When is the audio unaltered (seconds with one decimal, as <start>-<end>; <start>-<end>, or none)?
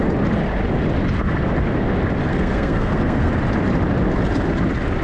0.0-2.3; 3.3-5.0